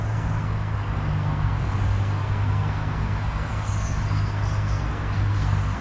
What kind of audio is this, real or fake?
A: fake